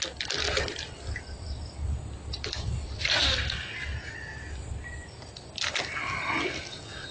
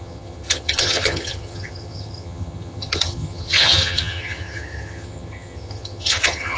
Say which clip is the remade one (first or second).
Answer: second